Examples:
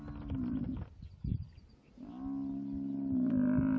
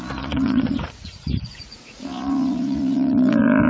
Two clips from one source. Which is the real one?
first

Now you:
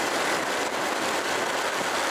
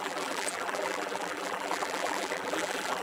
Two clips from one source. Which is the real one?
first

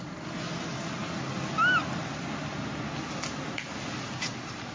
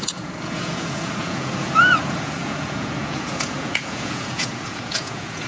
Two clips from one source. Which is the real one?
first